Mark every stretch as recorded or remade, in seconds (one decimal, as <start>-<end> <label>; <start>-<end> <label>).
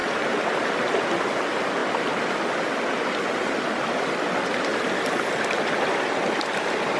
0.0-7.0 recorded